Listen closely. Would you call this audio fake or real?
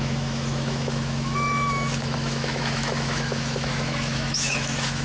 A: fake